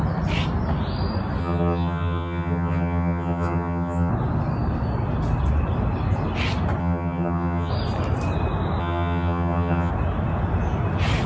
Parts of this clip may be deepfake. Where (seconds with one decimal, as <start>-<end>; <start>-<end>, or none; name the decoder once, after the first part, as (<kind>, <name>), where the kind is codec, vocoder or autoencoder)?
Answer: 1.4-4.1 (vocoder, HiFi-GAN); 6.8-7.7; 8.8-9.9